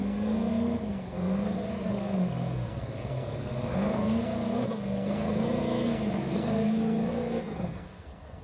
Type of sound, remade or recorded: remade